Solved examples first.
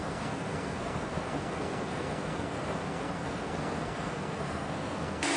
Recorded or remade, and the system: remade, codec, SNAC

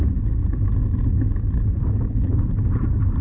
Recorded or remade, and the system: recorded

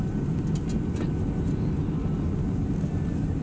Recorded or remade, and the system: recorded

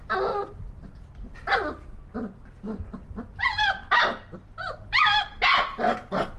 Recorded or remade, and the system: recorded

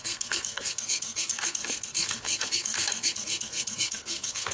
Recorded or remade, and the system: remade, codec, SNAC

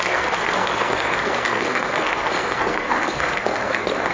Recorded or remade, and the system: remade, codec, SNAC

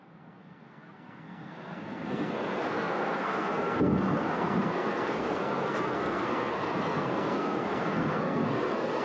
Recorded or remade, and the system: remade, codec, SNAC